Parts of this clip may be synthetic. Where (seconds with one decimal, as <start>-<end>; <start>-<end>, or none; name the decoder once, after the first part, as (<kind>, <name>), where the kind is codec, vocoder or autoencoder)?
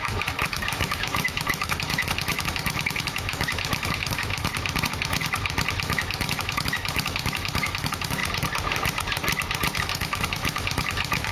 0.0-4.5 (autoencoder, DAC-VAE); 5.8-8.2; 9.8-11.3